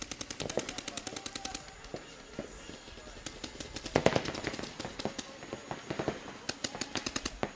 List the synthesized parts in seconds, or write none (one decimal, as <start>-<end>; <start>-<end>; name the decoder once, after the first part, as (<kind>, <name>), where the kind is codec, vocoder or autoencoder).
none